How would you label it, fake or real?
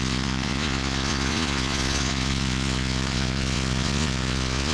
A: fake